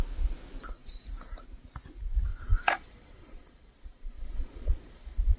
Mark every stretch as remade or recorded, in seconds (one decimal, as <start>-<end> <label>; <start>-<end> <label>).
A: 0.0-2.3 recorded; 2.3-5.4 remade